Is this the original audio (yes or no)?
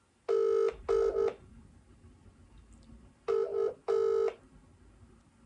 yes